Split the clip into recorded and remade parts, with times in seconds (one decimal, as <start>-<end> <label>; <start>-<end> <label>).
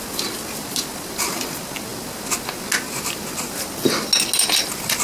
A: 0.0-5.0 recorded